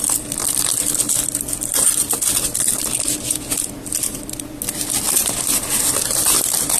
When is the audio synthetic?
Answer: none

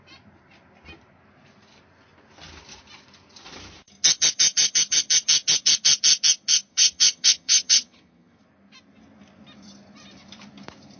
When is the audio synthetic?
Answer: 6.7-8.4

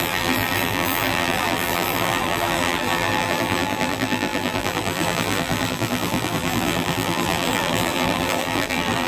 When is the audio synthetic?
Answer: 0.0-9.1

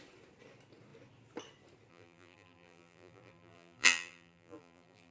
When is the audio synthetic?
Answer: 1.9-5.1

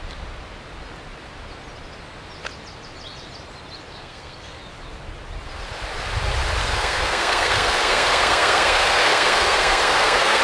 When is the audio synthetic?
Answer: 3.9-4.6; 6.6-10.4